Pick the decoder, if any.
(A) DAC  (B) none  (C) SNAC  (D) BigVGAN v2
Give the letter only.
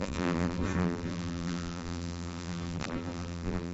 D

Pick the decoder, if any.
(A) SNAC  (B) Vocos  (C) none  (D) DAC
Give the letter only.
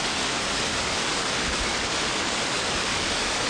D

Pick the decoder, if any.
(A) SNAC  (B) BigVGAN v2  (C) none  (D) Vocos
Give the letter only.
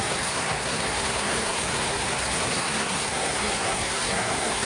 A